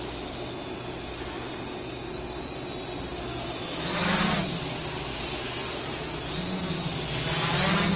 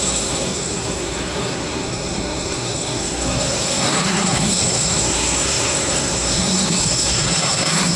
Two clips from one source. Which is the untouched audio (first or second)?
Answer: first